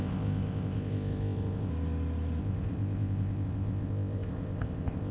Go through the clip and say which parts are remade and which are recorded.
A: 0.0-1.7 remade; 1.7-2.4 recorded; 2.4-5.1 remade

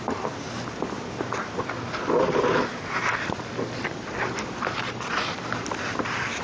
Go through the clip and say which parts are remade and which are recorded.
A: 0.0-6.4 remade

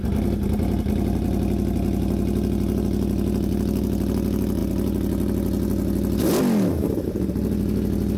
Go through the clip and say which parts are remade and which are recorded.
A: 0.0-8.2 recorded

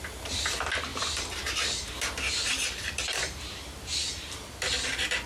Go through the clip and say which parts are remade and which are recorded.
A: 0.0-0.9 recorded; 0.9-4.1 remade; 4.1-5.3 recorded